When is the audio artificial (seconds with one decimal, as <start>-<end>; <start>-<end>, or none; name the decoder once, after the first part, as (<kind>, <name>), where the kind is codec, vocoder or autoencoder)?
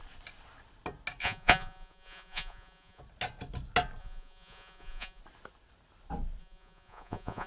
1.2-3.0 (vocoder, Vocos); 4.0-5.2; 6.4-7.5